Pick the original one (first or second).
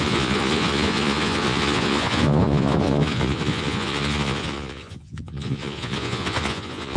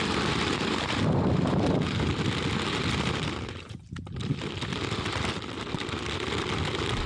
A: second